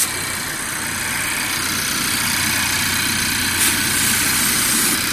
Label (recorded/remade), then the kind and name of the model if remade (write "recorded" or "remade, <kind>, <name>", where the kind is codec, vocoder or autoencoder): recorded